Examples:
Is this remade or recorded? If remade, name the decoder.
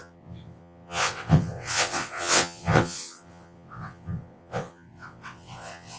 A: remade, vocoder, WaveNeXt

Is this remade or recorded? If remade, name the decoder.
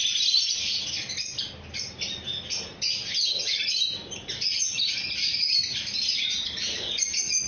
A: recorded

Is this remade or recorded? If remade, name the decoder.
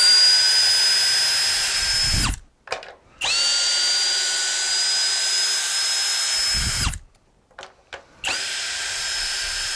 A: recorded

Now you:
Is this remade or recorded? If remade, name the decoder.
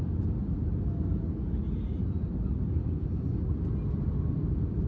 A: recorded